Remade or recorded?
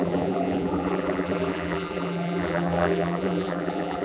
remade